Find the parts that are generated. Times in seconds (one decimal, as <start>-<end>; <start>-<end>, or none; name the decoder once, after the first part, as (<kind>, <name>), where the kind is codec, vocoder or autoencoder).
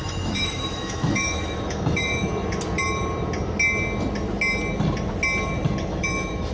0.0-2.3 (autoencoder, DAC-VAE); 5.9-6.5